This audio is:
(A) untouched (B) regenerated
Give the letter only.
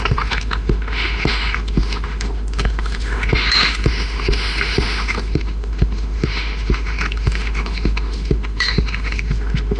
B